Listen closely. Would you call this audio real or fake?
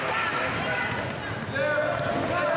real